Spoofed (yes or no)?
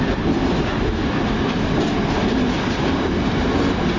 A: no